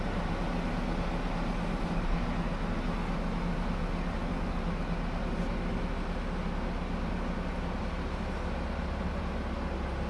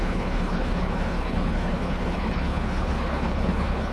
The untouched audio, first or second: first